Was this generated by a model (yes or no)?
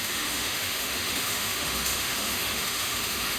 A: yes